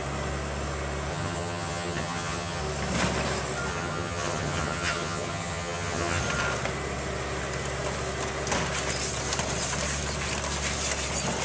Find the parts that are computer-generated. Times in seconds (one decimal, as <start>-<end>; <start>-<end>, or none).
1.1-2.6; 3.7-6.2